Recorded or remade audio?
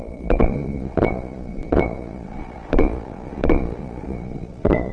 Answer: remade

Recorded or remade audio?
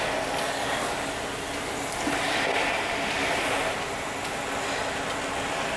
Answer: recorded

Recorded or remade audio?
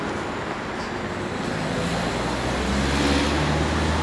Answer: recorded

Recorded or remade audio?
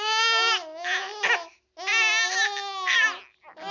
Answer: recorded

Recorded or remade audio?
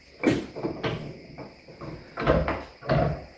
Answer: recorded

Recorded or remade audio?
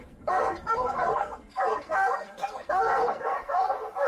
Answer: remade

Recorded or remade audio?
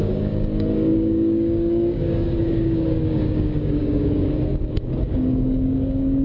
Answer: remade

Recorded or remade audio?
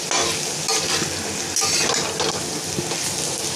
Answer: recorded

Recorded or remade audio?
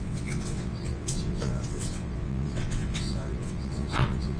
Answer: remade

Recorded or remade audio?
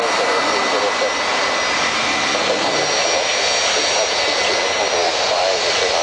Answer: recorded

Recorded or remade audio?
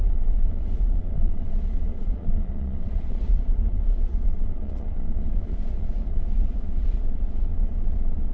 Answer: remade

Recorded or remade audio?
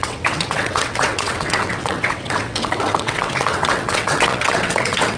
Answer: remade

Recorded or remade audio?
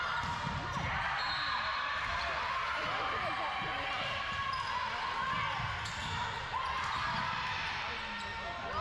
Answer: recorded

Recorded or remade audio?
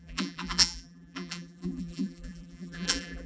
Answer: remade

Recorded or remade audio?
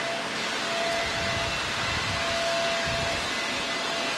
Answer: recorded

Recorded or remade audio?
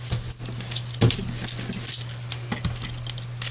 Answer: recorded